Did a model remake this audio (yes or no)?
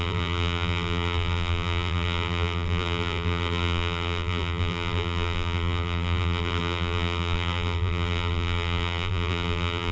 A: yes